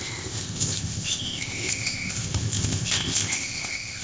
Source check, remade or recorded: remade